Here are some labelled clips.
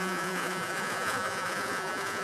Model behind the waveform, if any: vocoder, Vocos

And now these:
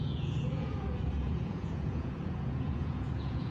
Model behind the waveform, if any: vocoder, Vocos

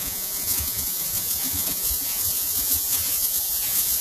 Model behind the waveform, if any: vocoder, Vocos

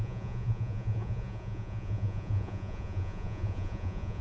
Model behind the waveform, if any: vocoder, Vocos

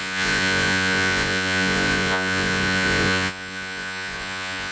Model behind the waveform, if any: vocoder, Vocos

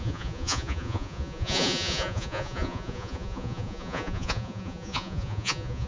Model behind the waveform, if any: vocoder, Vocos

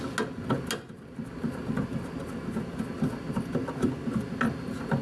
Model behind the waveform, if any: none